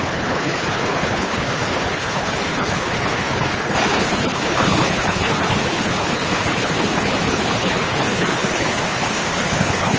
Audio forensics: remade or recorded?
remade